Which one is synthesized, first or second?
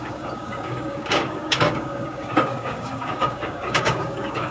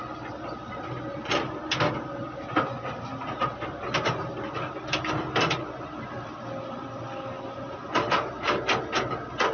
first